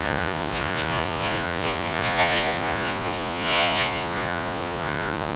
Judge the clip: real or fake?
fake